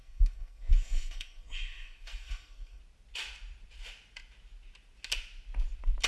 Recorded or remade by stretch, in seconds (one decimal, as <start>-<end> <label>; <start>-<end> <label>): 0.0-2.8 remade; 2.8-6.1 recorded